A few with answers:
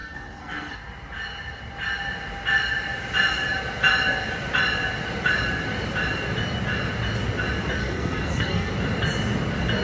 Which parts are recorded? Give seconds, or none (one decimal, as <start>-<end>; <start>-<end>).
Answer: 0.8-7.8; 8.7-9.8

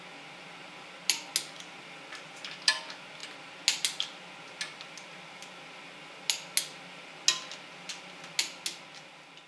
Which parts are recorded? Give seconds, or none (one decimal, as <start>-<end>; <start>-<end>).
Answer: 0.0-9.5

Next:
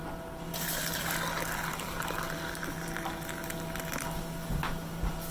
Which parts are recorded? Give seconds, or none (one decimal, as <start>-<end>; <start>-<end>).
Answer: 0.0-5.3

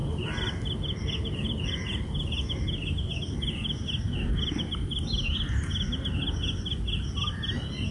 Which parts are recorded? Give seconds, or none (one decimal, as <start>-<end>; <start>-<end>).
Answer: 0.0-7.9

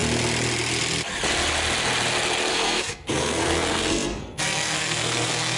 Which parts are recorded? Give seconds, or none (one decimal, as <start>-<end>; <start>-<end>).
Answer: 0.0-2.5